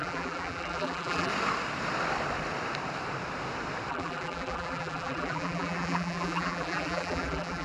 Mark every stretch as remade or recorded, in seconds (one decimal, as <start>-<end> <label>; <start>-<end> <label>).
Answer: 0.0-1.3 remade; 1.3-3.9 recorded; 3.9-7.6 remade